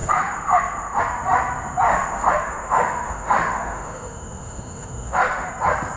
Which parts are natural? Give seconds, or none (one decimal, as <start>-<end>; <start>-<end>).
1.0-1.9; 5.5-6.0